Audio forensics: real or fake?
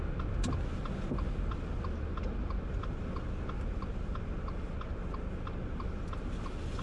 real